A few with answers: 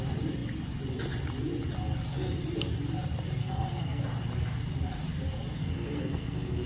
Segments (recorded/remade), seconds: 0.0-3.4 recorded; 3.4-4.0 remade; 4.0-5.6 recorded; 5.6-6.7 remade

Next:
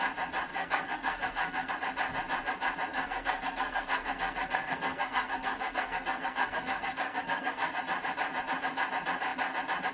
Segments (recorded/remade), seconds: 0.0-0.5 recorded; 0.5-1.7 remade; 1.7-2.9 recorded; 2.9-7.8 remade; 7.8-9.9 recorded

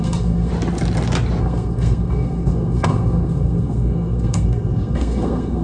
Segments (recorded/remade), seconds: 0.0-0.5 remade; 0.5-1.4 recorded; 1.4-5.6 remade

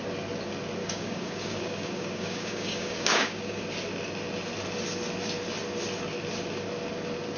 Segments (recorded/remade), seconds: 0.0-0.8 recorded; 0.8-3.6 remade; 3.6-7.4 recorded

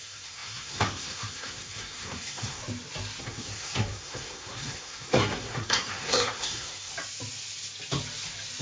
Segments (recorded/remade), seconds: 0.0-2.6 remade; 2.6-3.2 recorded; 3.2-6.9 remade; 6.9-8.6 recorded

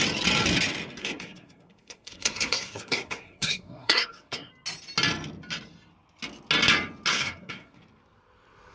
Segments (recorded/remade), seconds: 0.0-1.0 recorded; 1.0-4.5 remade; 4.5-7.1 recorded; 7.1-7.8 remade; 7.8-8.7 recorded

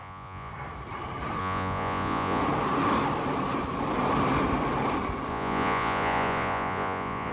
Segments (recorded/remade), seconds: 0.0-0.5 remade; 0.5-1.4 recorded; 1.4-2.4 remade; 2.4-5.3 recorded; 5.3-7.3 remade

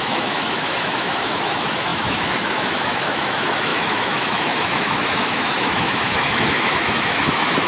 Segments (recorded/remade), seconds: 0.0-7.7 remade